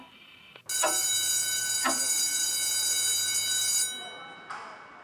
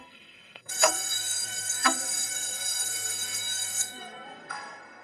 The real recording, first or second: first